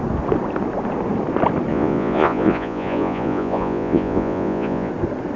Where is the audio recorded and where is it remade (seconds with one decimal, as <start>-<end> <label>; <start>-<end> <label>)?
0.0-1.7 recorded; 1.7-4.9 remade; 4.9-5.4 recorded